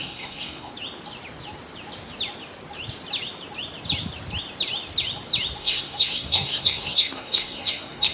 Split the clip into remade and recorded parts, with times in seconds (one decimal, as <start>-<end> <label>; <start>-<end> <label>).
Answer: 0.0-0.7 remade; 0.7-5.6 recorded; 5.6-8.1 remade